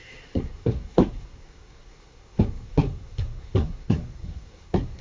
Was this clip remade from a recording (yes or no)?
yes